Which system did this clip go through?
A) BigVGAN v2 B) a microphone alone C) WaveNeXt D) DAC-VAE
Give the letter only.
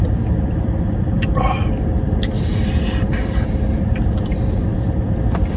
A